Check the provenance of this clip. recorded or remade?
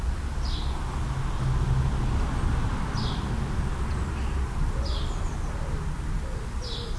recorded